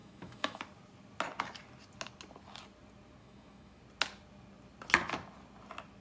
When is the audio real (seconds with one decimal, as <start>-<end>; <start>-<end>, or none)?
0.6-3.2; 3.8-6.0